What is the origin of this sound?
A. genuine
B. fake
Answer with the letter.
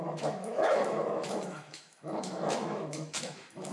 B